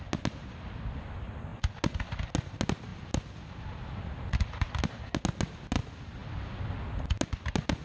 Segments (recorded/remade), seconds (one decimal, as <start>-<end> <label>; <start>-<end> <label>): 0.0-7.8 recorded